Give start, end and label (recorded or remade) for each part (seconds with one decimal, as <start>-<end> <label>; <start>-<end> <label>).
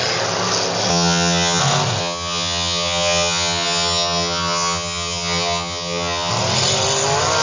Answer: 0.0-0.9 recorded; 0.9-1.6 remade; 1.6-2.0 recorded; 2.0-6.3 remade; 6.3-7.4 recorded